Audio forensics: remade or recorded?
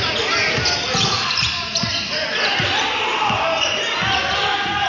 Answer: recorded